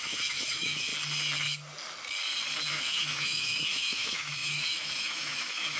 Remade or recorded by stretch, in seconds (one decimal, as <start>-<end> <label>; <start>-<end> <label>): 0.0-0.9 remade; 0.9-2.7 recorded; 2.7-5.8 remade